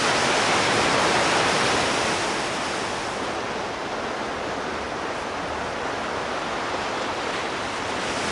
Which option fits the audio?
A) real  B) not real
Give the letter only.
A